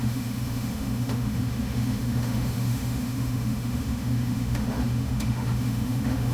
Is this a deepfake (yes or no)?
yes